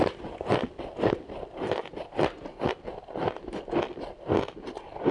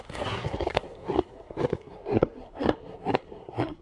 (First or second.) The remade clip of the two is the second